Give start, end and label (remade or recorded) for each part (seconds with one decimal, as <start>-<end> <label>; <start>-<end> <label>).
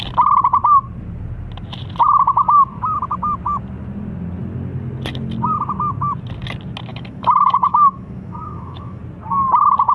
0.0-6.9 recorded; 6.9-9.0 remade; 9.0-9.9 recorded